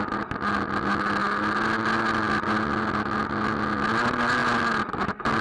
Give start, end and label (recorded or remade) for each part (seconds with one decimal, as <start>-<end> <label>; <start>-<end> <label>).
0.0-5.4 recorded